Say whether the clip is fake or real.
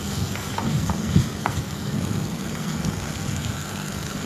fake